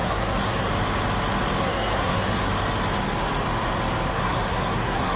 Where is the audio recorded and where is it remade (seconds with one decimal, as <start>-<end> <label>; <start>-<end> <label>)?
0.0-0.7 remade; 0.7-1.6 recorded; 1.6-2.5 remade; 2.5-4.1 recorded; 4.1-5.2 remade

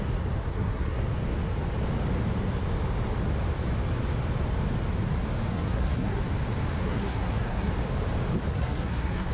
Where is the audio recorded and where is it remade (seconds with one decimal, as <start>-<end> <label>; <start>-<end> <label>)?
0.0-0.5 recorded; 0.5-1.0 remade; 1.0-5.5 recorded; 5.5-6.2 remade; 6.2-6.8 recorded; 6.8-7.7 remade; 7.7-8.5 recorded; 8.5-9.3 remade

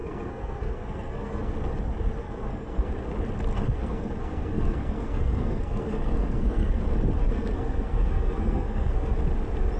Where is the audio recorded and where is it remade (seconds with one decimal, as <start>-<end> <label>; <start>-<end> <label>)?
0.0-1.5 remade; 1.5-2.2 recorded; 2.2-2.9 remade; 2.9-3.5 recorded; 3.5-6.8 remade; 6.8-7.2 recorded; 7.2-9.1 remade; 9.1-9.8 recorded